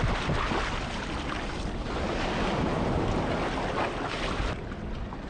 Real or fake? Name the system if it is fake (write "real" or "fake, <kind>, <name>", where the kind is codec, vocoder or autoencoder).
real